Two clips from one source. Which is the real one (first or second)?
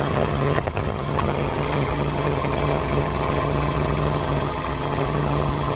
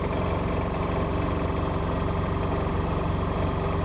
second